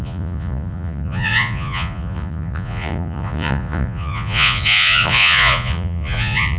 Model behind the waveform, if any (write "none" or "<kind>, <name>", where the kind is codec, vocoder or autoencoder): vocoder, Vocos